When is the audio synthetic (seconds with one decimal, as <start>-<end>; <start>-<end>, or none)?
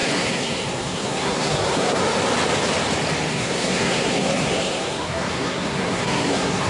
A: 0.0-2.0; 3.3-6.7